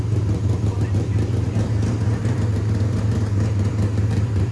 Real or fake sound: fake